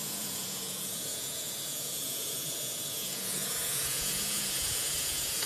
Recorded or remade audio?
remade